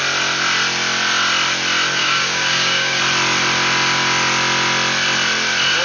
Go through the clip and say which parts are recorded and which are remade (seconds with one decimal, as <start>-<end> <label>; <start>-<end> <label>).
0.0-2.0 recorded; 2.0-3.0 remade; 3.0-5.8 recorded